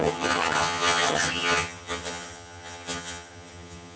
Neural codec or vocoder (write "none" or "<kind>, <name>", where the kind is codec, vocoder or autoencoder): vocoder, HiFi-GAN